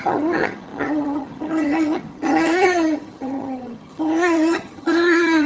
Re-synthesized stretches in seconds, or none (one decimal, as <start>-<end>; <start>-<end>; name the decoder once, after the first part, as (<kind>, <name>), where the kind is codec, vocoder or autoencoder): 0.0-5.5 (vocoder, HiFi-GAN)